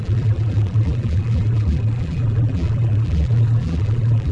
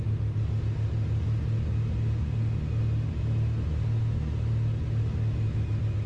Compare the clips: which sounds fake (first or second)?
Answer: first